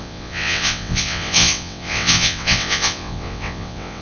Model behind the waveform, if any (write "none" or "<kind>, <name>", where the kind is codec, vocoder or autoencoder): vocoder, WaveNeXt